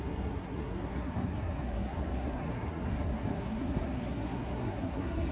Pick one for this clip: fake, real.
fake